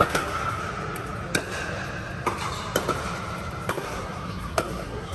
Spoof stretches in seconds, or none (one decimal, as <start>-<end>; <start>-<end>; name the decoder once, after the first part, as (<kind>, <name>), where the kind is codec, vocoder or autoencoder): 0.0-0.6 (codec, SNAC); 3.7-5.1